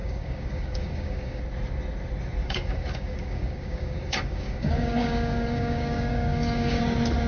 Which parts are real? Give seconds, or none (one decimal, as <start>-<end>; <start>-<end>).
1.4-2.4; 6.8-7.3